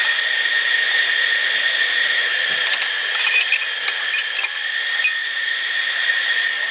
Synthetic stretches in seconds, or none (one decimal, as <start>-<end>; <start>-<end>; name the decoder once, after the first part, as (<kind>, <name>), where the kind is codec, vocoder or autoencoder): none